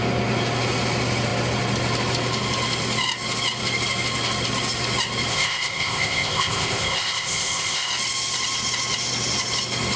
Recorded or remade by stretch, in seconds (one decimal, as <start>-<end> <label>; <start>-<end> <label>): 0.0-5.3 recorded; 5.3-7.9 remade; 7.9-10.0 recorded